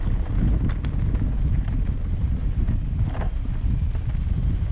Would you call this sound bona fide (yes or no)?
yes